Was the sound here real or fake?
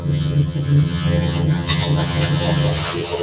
fake